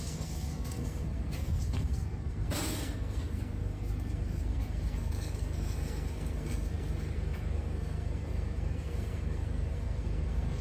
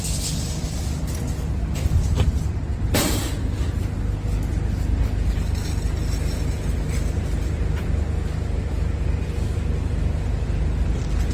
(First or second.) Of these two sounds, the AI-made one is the first